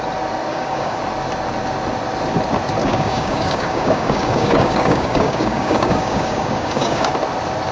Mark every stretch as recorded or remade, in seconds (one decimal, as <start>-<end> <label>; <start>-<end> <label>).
0.0-0.5 recorded; 0.5-1.0 remade; 1.0-2.8 recorded; 2.8-7.1 remade; 7.1-7.7 recorded